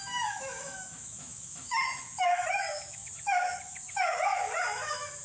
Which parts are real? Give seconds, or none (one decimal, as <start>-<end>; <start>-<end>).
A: none